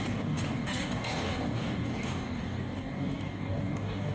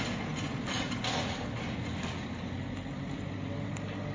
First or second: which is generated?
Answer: first